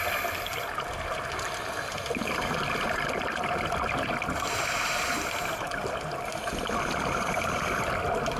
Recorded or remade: recorded